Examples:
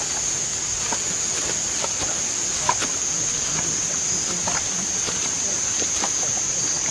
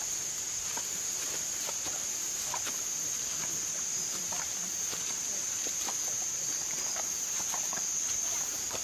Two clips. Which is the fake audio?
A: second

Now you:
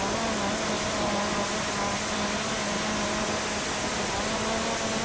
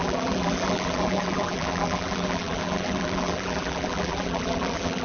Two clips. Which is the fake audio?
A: second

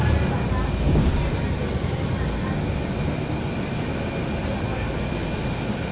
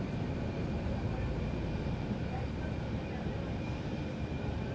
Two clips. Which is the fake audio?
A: second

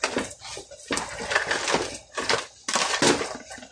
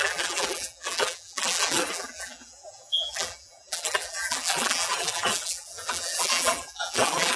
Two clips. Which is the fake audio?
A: second